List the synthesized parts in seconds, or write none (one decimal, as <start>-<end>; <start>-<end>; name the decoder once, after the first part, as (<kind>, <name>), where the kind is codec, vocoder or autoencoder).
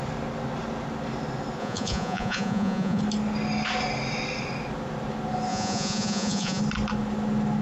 1.6-3.0 (vocoder, Vocos); 5.5-6.6